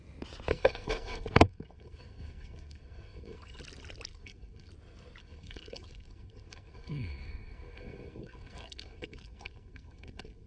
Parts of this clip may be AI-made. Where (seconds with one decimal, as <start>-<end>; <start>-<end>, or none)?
0.5-3.6; 4.1-4.7; 5.2-10.5